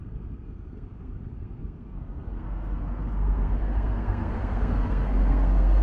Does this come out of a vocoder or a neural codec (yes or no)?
yes